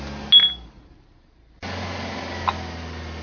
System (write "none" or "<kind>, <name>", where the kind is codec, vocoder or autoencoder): none